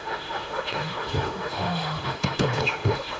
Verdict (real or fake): fake